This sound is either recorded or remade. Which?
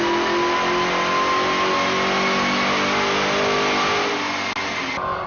recorded